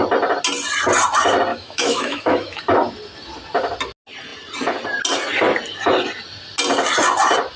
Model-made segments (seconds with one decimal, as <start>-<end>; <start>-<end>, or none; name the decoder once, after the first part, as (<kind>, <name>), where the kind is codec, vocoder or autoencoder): 1.5-2.6 (autoencoder, DAC-VAE)